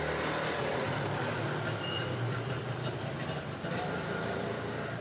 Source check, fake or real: real